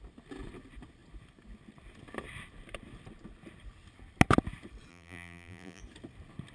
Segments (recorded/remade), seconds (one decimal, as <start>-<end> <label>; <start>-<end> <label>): 0.0-4.9 recorded; 4.9-5.8 remade; 5.8-6.5 recorded